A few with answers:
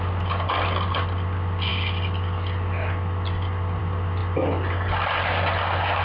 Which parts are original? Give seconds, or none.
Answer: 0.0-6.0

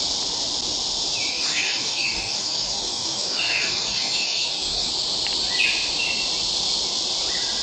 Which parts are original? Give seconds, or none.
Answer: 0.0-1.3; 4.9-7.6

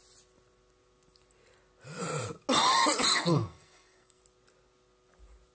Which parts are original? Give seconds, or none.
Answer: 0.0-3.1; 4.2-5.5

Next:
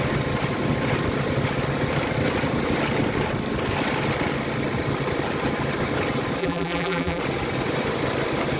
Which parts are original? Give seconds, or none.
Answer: 0.0-6.4; 7.2-8.6

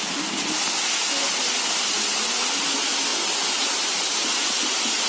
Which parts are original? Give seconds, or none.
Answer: 0.0-5.1

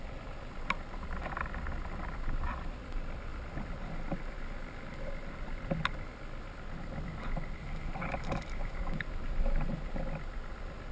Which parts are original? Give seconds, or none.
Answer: 0.0-7.6; 10.0-10.9

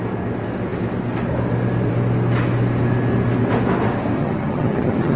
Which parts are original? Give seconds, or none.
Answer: 0.0-4.2